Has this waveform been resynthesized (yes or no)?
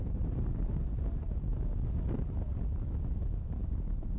no